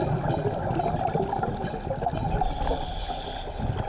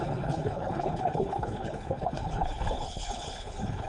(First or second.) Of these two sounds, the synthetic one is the second